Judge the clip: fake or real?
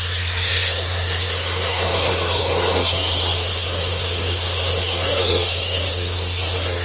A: fake